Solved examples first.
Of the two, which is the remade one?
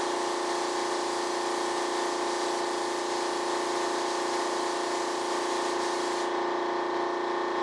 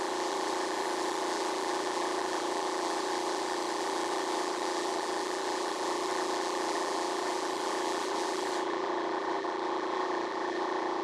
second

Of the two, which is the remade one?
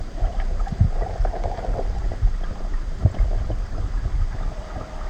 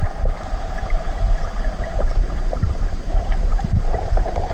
second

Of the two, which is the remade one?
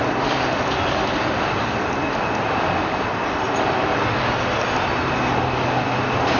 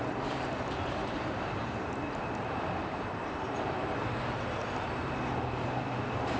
second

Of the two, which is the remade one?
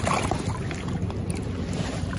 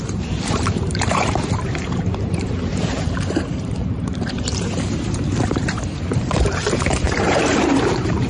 second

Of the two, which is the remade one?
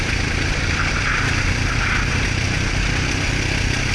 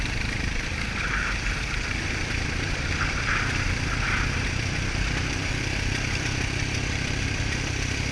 second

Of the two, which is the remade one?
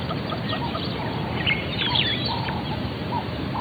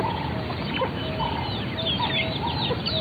first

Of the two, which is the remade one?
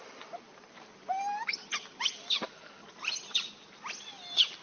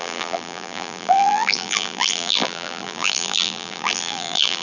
second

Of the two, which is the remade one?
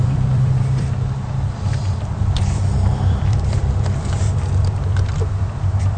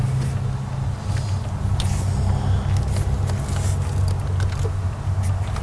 first